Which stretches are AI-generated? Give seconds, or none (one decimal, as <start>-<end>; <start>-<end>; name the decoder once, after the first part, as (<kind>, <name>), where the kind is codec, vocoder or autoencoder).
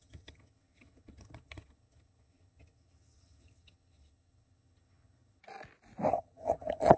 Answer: 0.0-5.4 (vocoder, HiFi-GAN); 6.1-7.0